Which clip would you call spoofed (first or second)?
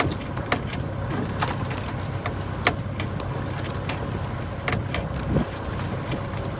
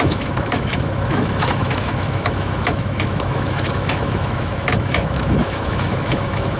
second